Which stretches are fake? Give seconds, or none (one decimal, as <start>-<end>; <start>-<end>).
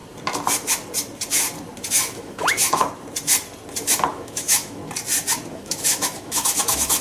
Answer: 1.9-2.8; 4.1-4.8; 5.5-7.0